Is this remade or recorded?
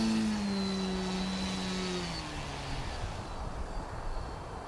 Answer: recorded